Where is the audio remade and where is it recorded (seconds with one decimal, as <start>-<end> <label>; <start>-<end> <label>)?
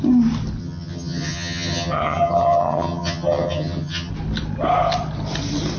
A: 0.0-0.6 recorded; 0.6-4.1 remade; 4.1-5.8 recorded